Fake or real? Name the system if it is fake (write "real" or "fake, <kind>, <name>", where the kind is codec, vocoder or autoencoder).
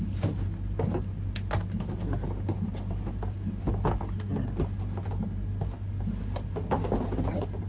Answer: real